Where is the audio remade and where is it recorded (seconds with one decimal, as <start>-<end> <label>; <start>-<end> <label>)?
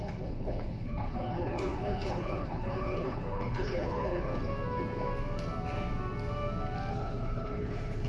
0.0-4.3 remade; 4.3-6.9 recorded; 6.9-8.1 remade